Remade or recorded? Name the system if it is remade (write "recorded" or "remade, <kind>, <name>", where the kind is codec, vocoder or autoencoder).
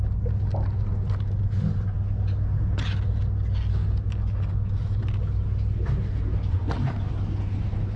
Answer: recorded